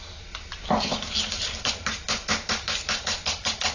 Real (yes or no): yes